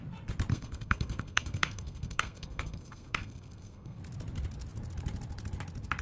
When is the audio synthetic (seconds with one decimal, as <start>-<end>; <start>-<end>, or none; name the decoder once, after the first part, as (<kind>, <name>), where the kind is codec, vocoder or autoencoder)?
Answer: 0.5-4.0 (codec, SNAC)